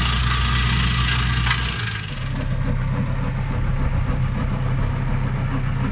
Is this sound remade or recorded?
recorded